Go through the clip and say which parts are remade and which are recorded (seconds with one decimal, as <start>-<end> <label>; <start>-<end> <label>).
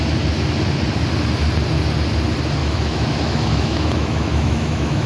0.0-2.6 recorded; 2.6-5.1 remade